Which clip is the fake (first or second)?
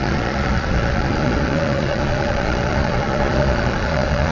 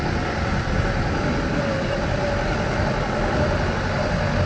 first